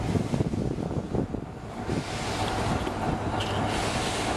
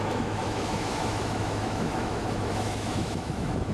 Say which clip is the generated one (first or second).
second